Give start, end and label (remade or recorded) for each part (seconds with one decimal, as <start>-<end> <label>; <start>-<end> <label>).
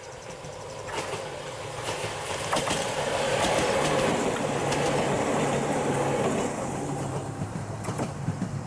0.0-4.6 remade; 4.6-6.2 recorded; 6.2-8.7 remade